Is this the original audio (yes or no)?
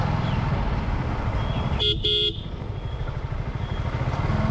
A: yes